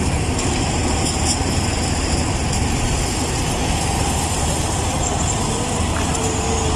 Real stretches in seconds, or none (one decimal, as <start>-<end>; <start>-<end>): 0.0-6.8